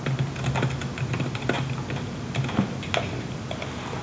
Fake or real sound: real